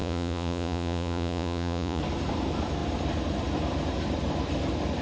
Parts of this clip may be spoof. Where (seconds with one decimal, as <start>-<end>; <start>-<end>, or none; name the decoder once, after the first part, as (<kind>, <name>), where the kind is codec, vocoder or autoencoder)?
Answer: 0.0-2.0 (vocoder, Vocos)